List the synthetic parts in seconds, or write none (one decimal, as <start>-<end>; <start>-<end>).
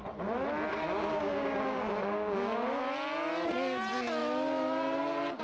0.7-2.8